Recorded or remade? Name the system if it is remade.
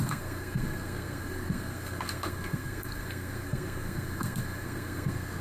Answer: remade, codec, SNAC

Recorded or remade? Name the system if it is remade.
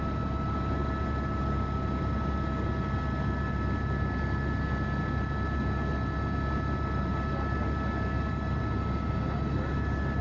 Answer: recorded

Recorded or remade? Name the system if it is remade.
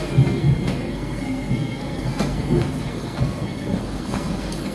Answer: remade, codec, SNAC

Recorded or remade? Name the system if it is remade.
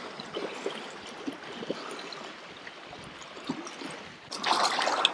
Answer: recorded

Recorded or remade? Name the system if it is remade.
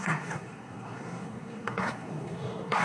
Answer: remade, codec, SNAC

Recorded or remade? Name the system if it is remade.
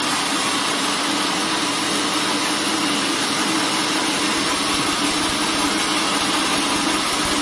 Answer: recorded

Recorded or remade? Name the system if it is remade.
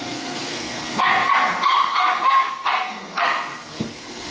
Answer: remade, codec, SNAC